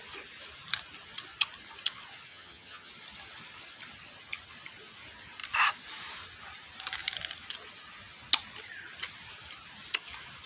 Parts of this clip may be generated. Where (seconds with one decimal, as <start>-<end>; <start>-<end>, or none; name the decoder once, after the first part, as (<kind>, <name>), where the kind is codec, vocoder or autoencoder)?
2.3-2.9 (vocoder, HiFi-GAN)